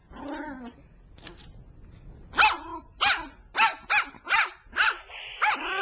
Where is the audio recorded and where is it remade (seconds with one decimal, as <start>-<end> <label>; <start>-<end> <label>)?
0.0-5.8 recorded